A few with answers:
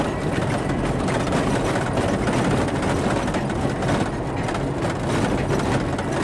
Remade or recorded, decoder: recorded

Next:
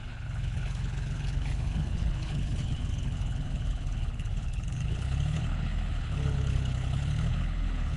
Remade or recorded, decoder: remade, codec, HILCodec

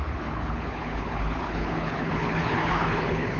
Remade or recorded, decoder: remade, codec, HILCodec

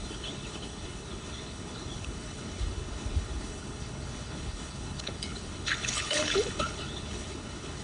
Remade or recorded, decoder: remade, codec, HILCodec